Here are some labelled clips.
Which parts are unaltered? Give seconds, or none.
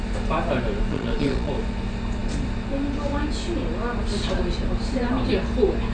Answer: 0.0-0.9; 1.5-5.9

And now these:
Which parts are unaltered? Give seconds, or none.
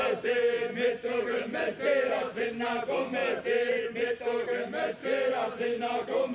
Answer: 0.0-1.2; 1.7-2.5; 3.2-3.7; 5.0-5.8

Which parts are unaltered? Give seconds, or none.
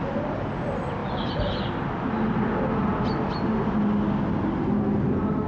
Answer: 0.0-5.5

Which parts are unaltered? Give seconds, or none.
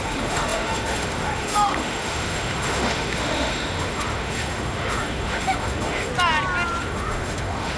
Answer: 6.1-6.8